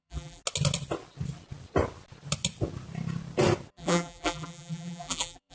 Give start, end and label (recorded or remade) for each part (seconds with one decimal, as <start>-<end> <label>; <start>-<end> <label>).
0.0-0.4 remade; 0.4-3.7 recorded; 3.7-5.5 remade

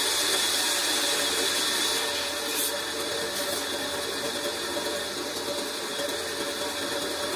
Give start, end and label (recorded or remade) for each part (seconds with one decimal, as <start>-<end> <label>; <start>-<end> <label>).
0.0-7.4 recorded

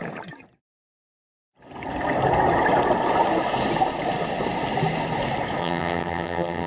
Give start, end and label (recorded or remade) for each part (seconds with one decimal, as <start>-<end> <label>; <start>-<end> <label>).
0.0-5.6 recorded; 5.6-6.7 remade

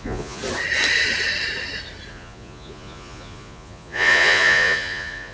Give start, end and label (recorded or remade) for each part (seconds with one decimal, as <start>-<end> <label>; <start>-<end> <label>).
0.0-0.4 remade; 0.4-2.1 recorded; 2.1-5.3 remade

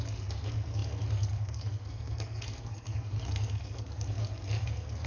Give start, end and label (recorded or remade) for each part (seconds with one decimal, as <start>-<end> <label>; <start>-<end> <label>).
0.0-5.1 remade

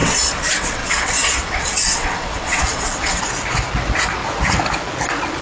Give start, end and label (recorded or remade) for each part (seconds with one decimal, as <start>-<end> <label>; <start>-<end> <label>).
0.0-3.2 remade; 3.2-5.4 recorded

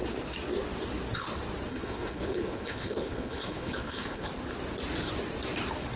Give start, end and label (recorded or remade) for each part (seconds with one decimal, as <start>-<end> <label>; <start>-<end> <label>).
0.0-1.7 recorded; 1.7-4.3 remade; 4.3-6.0 recorded

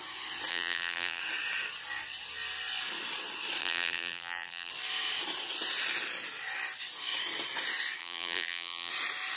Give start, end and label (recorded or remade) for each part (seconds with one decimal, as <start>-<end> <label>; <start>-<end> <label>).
0.0-0.5 recorded; 0.5-1.2 remade; 1.2-3.6 recorded; 3.6-4.7 remade; 4.7-8.0 recorded; 8.0-8.9 remade; 8.9-9.4 recorded